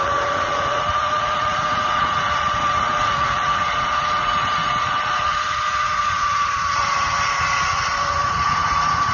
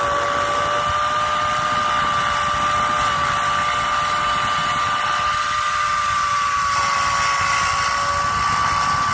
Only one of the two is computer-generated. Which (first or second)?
first